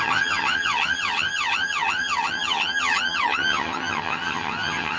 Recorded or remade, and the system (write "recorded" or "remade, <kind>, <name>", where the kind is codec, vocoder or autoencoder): remade, vocoder, HiFi-GAN